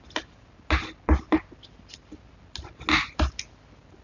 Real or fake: real